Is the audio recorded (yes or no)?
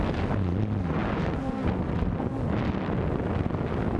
yes